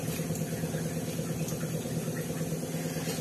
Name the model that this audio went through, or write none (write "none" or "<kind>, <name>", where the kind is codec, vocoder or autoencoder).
none